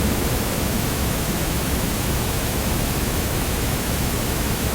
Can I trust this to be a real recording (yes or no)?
no